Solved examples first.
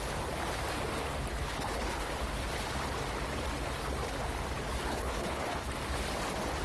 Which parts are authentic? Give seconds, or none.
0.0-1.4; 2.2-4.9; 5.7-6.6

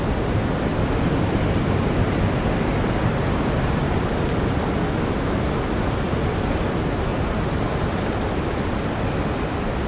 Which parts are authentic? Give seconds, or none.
0.0-7.1; 7.8-9.9

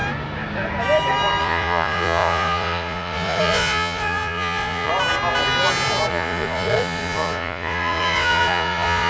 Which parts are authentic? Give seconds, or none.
0.0-1.4; 4.9-6.1

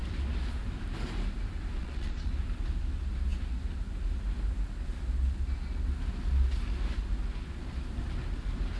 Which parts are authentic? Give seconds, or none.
0.0-1.8; 2.3-8.8